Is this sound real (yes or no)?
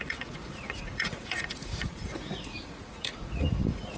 no